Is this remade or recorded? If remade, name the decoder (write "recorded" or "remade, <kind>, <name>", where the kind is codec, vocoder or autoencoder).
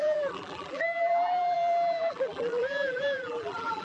remade, vocoder, BigVGAN v2